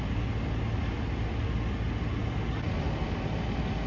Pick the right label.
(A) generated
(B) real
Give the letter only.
B